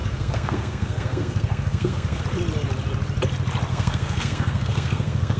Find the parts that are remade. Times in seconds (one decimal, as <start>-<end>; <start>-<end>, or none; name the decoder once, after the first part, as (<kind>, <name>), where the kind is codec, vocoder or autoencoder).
0.0-2.2 (codec, SNAC); 3.7-5.4